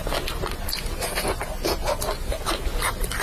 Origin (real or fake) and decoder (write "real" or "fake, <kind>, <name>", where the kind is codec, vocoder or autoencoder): real